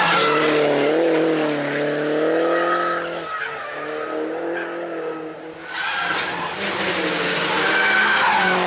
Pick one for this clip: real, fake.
real